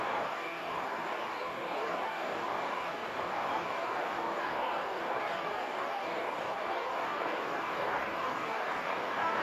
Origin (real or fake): fake